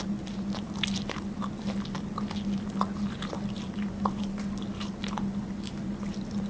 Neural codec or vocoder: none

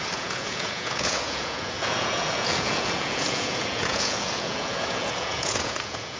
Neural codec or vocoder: vocoder, Vocos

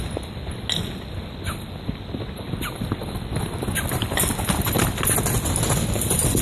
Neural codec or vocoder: none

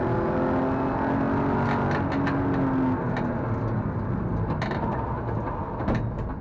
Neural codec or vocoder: none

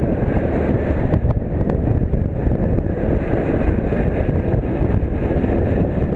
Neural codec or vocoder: none